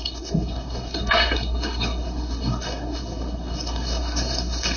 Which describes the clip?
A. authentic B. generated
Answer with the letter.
B